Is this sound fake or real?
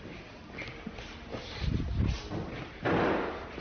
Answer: real